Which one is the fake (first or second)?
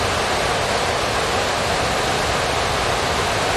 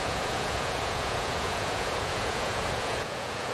second